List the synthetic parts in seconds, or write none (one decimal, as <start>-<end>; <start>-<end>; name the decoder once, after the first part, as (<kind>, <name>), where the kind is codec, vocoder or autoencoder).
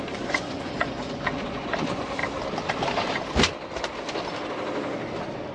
0.0-2.2 (vocoder, Vocos)